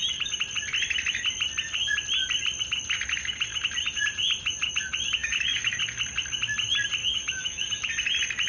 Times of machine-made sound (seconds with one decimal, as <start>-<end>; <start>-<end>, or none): 5.2-5.8; 7.0-7.9